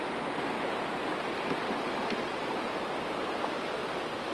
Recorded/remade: recorded